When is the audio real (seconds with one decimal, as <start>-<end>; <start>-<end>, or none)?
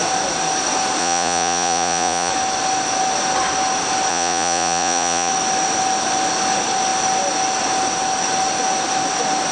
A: 0.0-1.0; 2.3-4.1; 5.3-9.5